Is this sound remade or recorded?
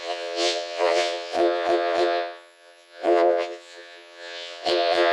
remade